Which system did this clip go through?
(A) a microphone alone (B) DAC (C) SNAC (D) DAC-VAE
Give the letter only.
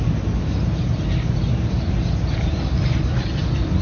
A